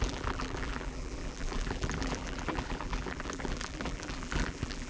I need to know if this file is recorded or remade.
remade